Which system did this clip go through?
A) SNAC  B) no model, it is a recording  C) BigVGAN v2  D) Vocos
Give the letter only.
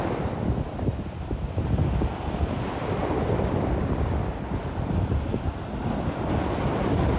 B